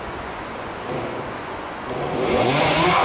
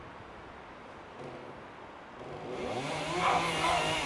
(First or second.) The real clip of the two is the second